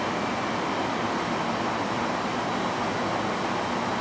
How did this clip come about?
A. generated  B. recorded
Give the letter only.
B